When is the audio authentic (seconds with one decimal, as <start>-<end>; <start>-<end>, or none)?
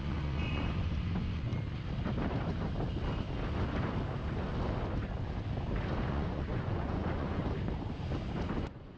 1.5-6.1; 7.4-8.6